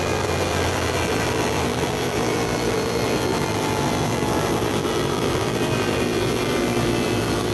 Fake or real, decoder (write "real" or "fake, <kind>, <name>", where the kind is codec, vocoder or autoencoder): fake, vocoder, BigVGAN v2